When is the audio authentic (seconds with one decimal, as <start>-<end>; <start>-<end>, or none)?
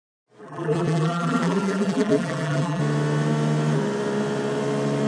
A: 0.0-0.4; 2.8-5.1